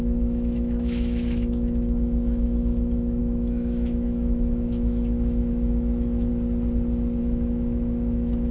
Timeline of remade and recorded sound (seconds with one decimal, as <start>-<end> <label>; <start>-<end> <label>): 0.0-6.3 remade; 6.3-7.2 recorded; 7.2-8.5 remade